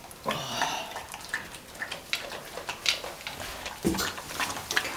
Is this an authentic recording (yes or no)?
yes